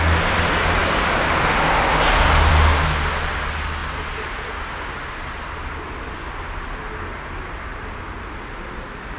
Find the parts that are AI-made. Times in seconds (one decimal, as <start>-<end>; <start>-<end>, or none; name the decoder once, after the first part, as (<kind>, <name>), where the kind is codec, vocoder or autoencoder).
none